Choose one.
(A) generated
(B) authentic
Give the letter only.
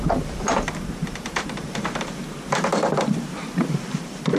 A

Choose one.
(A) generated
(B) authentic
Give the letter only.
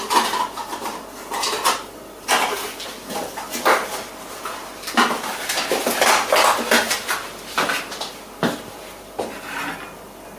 B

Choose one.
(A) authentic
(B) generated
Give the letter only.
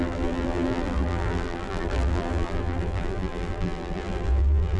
B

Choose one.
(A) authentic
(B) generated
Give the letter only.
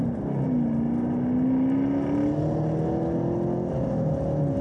A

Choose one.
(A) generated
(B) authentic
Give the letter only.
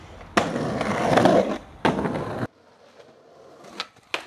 B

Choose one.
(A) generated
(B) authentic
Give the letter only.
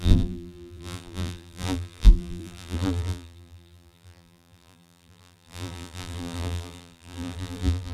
A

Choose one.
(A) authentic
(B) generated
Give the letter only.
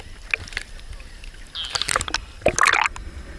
A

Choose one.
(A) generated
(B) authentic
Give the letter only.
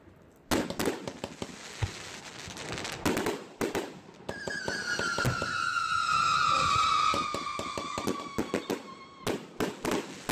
B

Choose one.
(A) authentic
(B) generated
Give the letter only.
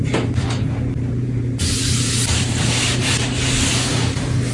B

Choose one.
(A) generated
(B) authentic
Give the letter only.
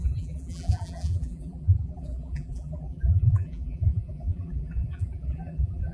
A